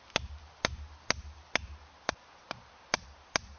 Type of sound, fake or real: real